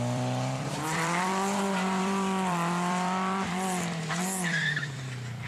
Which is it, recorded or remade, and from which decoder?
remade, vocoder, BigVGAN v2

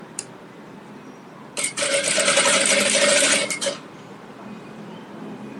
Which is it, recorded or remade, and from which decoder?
remade, vocoder, BigVGAN v2